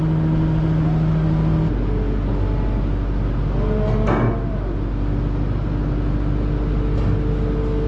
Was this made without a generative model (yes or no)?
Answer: yes